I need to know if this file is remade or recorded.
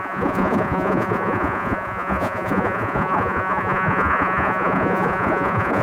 remade